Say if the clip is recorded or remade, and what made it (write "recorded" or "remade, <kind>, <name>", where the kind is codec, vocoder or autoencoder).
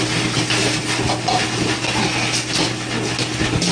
recorded